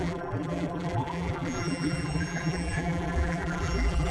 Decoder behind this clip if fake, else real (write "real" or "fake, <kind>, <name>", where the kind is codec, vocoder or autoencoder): fake, vocoder, BigVGAN v2